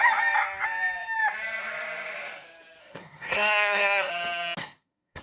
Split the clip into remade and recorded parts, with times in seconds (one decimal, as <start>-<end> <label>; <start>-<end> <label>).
0.0-2.8 recorded; 2.8-4.1 remade; 4.1-4.6 recorded; 4.6-5.2 remade